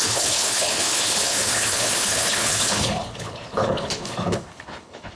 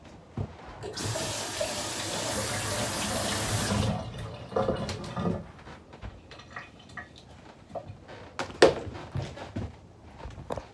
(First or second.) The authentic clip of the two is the second